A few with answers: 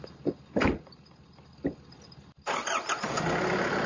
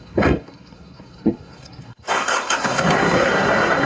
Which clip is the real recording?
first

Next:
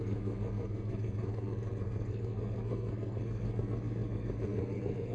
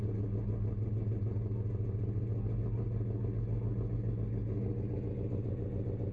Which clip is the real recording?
second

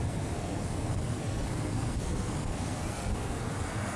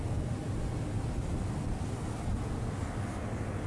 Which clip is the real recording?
second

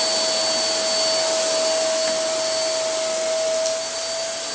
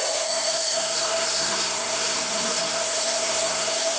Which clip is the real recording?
first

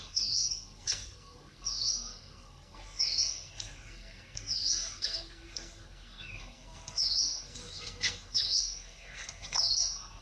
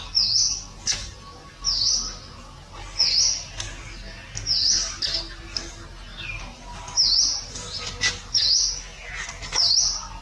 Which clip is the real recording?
second